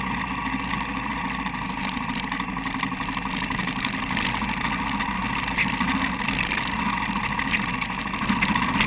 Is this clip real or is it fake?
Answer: real